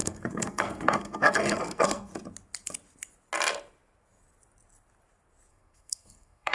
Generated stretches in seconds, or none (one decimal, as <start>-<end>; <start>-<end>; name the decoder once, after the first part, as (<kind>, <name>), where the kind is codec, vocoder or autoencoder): 0.0-2.1 (codec, SNAC); 5.5-6.5